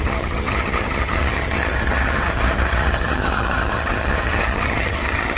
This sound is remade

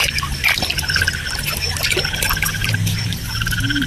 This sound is recorded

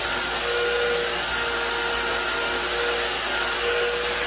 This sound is recorded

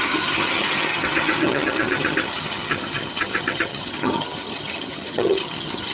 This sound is remade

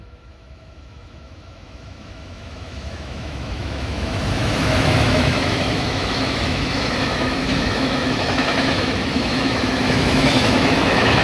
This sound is remade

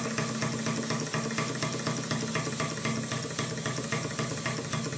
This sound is recorded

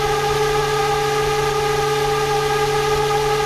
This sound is recorded